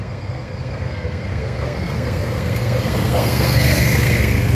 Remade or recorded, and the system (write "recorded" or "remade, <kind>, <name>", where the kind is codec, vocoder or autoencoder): remade, codec, SNAC